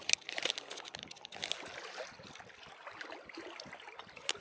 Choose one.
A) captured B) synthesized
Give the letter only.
A